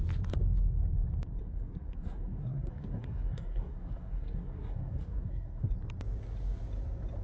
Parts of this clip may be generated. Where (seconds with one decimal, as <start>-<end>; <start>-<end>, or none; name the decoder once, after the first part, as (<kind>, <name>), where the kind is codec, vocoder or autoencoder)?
1.4-5.7 (codec, SNAC)